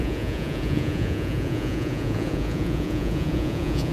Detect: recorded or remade remade